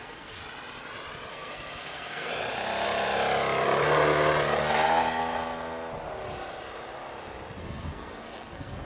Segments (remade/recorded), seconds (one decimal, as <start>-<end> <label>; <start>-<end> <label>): 0.0-0.4 remade; 0.4-1.3 recorded; 1.3-2.3 remade; 2.3-7.6 recorded; 7.6-8.9 remade